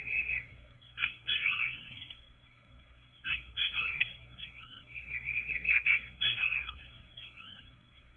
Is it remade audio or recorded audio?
remade